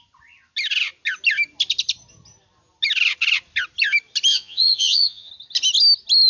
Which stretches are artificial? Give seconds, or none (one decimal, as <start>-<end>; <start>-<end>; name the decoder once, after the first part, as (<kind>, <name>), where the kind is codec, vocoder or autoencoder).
4.3-5.3 (vocoder, Vocos)